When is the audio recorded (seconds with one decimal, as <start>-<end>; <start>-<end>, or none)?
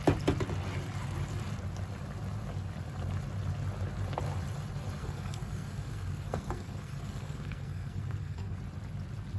0.0-5.0; 8.6-9.4